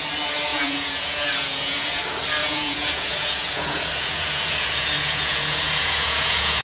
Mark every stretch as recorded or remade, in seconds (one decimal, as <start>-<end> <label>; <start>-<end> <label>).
0.0-0.5 recorded; 0.5-2.0 remade; 2.0-2.4 recorded; 2.4-6.6 remade